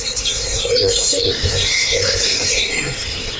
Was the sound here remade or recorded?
remade